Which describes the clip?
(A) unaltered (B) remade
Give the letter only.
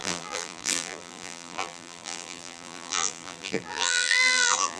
B